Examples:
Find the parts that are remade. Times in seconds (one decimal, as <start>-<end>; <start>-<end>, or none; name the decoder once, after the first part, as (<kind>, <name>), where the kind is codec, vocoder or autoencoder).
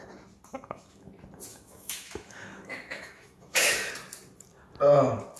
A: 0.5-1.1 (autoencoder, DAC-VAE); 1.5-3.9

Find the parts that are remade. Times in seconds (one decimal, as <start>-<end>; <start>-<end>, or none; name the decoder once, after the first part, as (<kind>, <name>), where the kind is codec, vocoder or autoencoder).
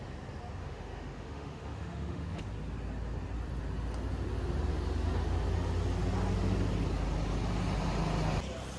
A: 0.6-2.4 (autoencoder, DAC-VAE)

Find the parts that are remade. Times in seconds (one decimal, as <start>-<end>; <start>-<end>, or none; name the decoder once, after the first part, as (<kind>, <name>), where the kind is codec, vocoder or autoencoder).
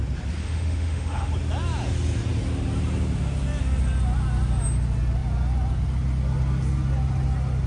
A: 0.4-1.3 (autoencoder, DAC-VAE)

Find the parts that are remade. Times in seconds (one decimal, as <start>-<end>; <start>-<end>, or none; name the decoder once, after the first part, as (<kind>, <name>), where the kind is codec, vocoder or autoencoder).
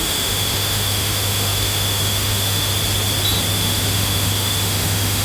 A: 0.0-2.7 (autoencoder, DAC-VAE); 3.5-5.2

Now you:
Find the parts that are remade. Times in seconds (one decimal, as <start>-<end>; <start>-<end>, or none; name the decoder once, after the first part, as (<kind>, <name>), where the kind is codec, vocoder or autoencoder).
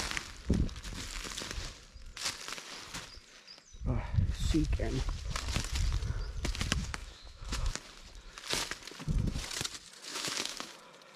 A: 7.0-7.7 (autoencoder, DAC-VAE); 10.1-10.7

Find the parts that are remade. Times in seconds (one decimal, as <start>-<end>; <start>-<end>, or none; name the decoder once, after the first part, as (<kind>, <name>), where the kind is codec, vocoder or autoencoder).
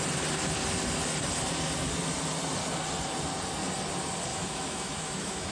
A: 4.3-5.5 (autoencoder, DAC-VAE)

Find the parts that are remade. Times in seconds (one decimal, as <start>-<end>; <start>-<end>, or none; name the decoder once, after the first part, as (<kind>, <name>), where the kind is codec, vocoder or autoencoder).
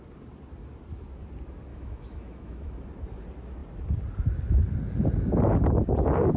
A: 1.7-2.7 (autoencoder, DAC-VAE)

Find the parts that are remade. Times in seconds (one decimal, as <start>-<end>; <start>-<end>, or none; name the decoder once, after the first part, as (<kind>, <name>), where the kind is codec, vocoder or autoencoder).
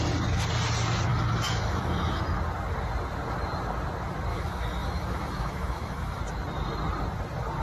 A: 1.1-2.2 (autoencoder, DAC-VAE); 4.3-6.2